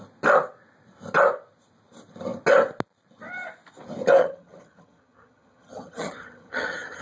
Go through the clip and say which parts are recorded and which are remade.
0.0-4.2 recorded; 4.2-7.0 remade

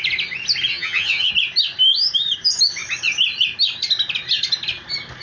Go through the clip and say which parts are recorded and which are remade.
0.0-0.7 recorded; 0.7-1.3 remade; 1.3-5.2 recorded

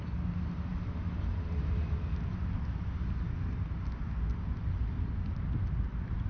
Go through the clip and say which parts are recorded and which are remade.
0.0-6.3 recorded

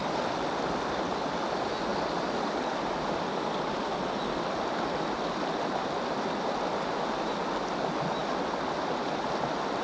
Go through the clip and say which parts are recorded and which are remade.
0.0-9.8 recorded

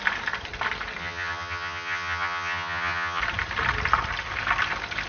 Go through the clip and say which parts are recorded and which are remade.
0.0-1.0 recorded; 1.0-3.2 remade; 3.2-5.1 recorded

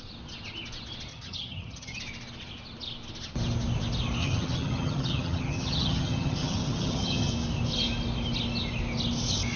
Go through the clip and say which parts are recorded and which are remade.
0.0-1.1 recorded; 1.1-2.0 remade; 2.0-4.2 recorded; 4.2-7.3 remade; 7.3-9.6 recorded

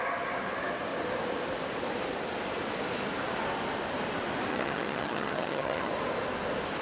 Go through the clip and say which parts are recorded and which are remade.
0.0-4.5 recorded; 4.5-5.9 remade; 5.9-6.8 recorded

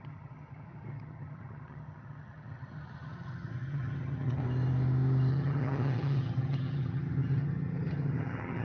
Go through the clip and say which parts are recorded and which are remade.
0.0-4.4 remade; 4.4-5.3 recorded; 5.3-8.6 remade